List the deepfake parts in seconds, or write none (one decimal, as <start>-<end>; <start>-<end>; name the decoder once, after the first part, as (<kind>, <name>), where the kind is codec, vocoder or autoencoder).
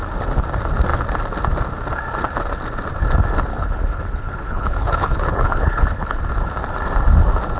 3.5-6.2 (codec, HILCodec)